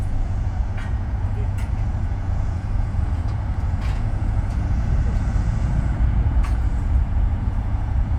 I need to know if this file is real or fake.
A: fake